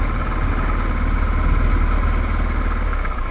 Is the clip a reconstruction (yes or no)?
no